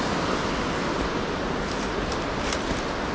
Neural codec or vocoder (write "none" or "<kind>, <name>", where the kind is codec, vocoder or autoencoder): none